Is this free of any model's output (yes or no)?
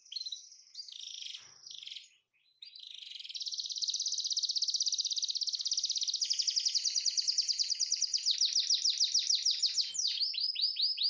yes